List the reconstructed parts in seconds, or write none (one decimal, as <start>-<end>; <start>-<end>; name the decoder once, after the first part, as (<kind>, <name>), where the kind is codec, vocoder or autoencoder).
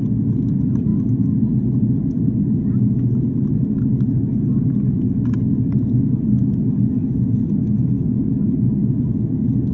7.6-8.7 (autoencoder, DAC-VAE)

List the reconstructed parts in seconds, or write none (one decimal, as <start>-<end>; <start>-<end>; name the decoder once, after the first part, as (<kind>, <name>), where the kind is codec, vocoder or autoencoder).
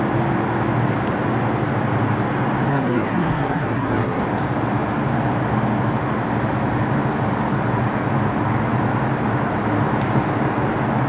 2.7-4.2 (codec, SNAC)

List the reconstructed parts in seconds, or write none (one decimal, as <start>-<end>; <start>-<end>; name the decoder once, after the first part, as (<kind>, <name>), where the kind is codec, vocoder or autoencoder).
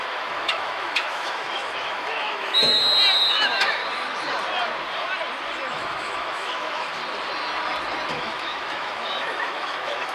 0.0-2.8 (autoencoder, DAC-VAE); 3.3-3.8; 5.7-7.0; 8.1-10.1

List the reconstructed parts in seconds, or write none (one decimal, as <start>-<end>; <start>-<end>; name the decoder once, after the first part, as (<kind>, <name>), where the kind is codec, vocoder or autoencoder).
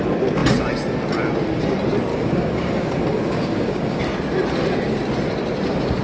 2.1-4.0 (codec, DAC)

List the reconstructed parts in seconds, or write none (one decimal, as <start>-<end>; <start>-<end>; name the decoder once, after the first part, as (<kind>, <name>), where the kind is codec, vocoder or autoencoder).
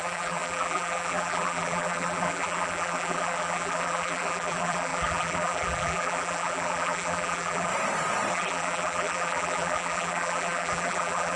0.0-7.7 (vocoder, BigVGAN v2); 8.3-11.4